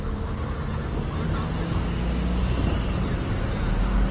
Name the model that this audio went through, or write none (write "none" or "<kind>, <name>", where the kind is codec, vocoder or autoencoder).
none